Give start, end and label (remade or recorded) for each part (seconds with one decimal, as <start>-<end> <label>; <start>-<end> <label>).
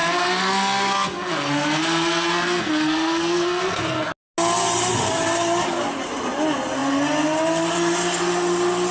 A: 0.0-4.1 remade; 4.1-8.9 recorded